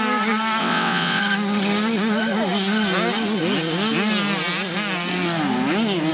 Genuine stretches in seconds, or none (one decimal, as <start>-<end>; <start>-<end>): 0.0-0.6; 1.2-6.1